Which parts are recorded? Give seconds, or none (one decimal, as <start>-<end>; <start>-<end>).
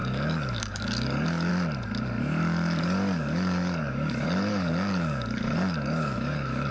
1.5-2.2